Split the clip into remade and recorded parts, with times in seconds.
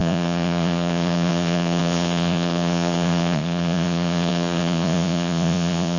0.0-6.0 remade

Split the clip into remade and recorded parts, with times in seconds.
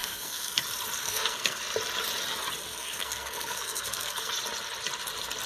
0.0-0.6 remade; 0.6-1.0 recorded; 1.0-1.6 remade; 1.6-2.7 recorded; 2.7-4.3 remade; 4.3-5.5 recorded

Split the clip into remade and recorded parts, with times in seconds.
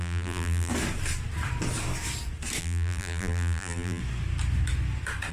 0.0-0.7 remade; 0.7-2.6 recorded; 2.6-4.0 remade; 4.0-5.3 recorded